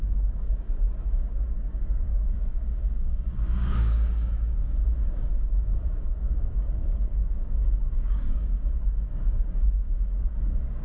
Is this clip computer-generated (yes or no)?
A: yes